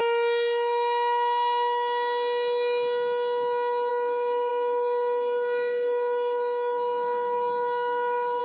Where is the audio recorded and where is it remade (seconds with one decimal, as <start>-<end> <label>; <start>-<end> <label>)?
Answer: 0.0-3.9 recorded; 3.9-8.4 remade